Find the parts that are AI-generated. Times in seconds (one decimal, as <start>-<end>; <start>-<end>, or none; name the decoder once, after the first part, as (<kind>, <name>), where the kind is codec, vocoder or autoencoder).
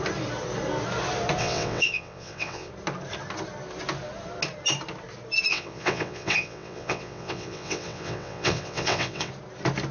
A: 1.4-2.7 (vocoder, WaveNeXt); 5.5-9.3